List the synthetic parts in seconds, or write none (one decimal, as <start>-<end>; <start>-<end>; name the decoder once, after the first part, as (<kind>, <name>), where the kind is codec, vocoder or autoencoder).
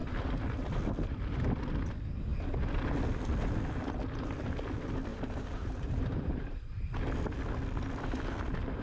5.1-6.9 (vocoder, BigVGAN v2)